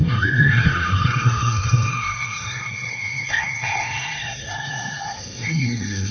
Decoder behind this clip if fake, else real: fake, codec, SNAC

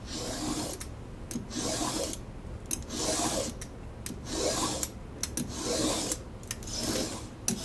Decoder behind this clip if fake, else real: real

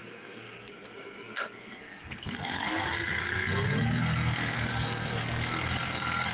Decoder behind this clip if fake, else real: fake, codec, SNAC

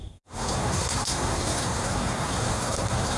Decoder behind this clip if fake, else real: fake, codec, SNAC